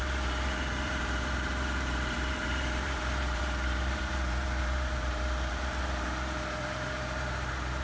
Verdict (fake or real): fake